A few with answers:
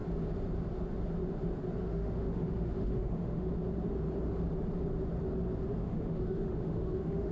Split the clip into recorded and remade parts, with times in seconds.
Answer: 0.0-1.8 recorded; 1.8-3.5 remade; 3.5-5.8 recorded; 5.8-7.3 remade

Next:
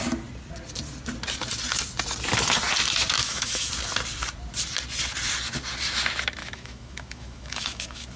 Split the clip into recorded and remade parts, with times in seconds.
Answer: 0.0-3.2 recorded; 3.2-3.7 remade; 3.7-6.4 recorded; 6.4-8.2 remade

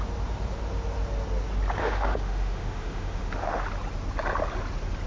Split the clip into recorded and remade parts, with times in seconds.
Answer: 0.0-1.8 recorded; 1.8-3.6 remade; 3.6-5.1 recorded

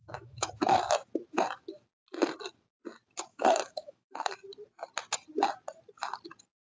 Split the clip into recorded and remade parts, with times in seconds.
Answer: 0.0-0.5 remade; 0.5-3.3 recorded; 3.3-4.3 remade; 4.3-6.6 recorded

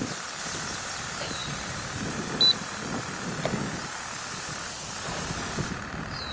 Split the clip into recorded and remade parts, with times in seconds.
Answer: 0.0-6.3 recorded